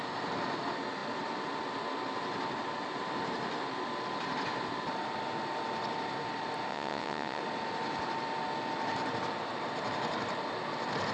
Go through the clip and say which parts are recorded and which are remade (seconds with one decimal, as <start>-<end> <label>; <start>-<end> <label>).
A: 0.0-6.7 recorded; 6.7-7.4 remade; 7.4-11.1 recorded